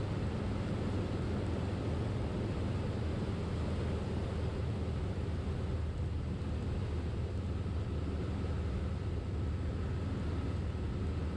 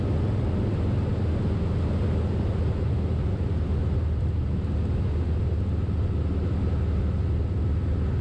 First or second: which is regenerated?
first